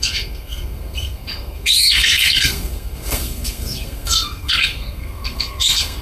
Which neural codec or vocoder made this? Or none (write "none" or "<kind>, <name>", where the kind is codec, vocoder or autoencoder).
codec, SNAC